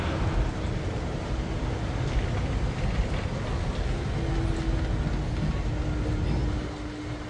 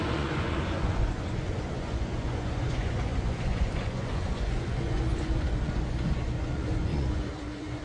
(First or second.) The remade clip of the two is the second